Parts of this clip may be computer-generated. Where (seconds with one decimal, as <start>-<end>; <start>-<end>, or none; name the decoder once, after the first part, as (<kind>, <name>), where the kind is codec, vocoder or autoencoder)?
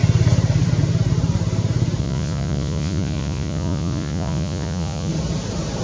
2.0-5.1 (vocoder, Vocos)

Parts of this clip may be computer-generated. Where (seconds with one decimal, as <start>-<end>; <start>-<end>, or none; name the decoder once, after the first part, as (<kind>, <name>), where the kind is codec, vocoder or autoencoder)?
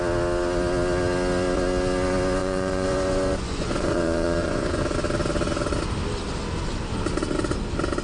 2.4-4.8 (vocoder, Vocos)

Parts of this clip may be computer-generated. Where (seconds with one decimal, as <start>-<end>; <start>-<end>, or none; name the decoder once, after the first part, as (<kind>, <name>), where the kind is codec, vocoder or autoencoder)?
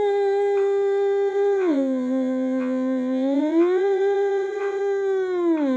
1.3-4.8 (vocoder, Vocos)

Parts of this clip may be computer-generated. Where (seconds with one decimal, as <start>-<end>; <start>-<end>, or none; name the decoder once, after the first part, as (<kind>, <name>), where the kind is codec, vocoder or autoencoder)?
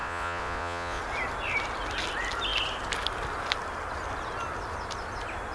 0.0-1.0 (vocoder, Vocos)